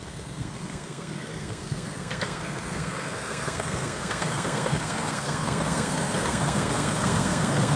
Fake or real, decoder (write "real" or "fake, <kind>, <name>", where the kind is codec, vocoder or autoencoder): fake, codec, SNAC